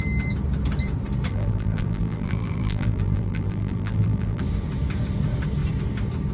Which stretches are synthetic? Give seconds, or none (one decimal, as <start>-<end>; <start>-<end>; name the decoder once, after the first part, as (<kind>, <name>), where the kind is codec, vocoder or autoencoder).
1.3-4.4 (vocoder, BigVGAN v2)